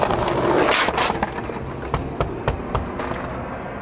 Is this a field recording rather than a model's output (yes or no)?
yes